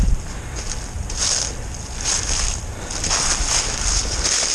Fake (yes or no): no